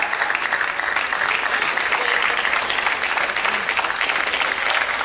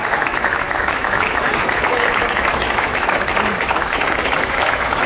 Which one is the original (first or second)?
first